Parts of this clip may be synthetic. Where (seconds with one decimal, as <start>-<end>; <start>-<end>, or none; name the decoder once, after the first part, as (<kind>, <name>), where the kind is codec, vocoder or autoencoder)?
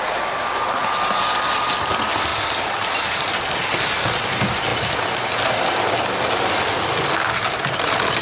none